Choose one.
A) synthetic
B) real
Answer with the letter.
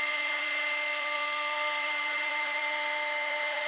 A